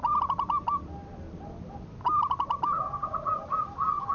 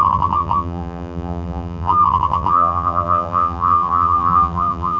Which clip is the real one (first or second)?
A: first